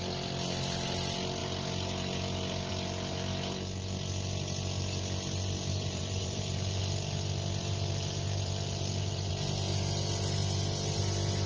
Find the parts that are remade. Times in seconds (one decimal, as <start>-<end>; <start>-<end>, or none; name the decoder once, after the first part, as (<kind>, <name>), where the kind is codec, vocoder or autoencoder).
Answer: 5.7-6.8 (vocoder, BigVGAN v2); 7.6-9.3